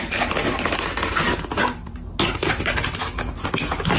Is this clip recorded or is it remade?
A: recorded